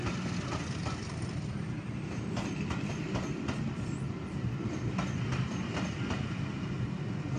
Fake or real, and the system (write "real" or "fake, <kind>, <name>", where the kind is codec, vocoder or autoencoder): real